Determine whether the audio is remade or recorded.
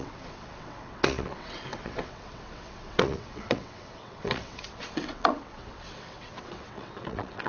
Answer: remade